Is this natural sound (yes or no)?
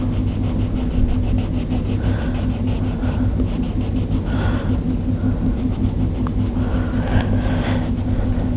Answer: yes